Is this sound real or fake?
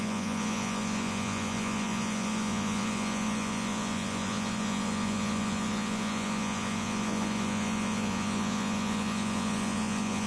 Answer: fake